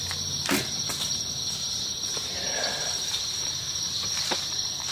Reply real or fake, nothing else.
fake